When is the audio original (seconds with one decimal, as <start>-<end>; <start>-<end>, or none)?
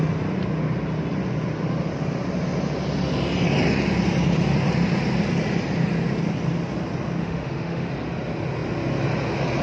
0.0-7.2; 7.9-9.6